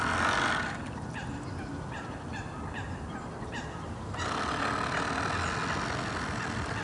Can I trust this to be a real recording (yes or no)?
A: yes